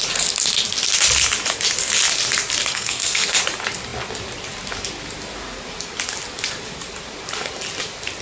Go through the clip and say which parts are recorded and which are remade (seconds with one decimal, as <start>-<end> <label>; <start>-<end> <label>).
0.0-2.7 recorded; 2.7-3.4 remade; 3.4-8.2 recorded